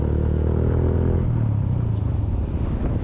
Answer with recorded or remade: recorded